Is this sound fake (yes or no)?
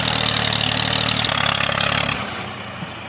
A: no